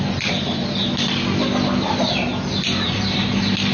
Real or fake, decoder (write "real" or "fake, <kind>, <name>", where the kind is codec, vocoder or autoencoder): real